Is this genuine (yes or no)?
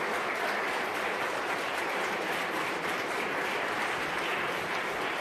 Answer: no